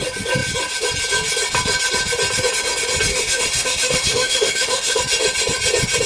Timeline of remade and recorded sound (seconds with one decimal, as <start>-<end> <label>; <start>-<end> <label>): 0.0-3.1 recorded; 3.1-5.0 remade; 5.0-6.1 recorded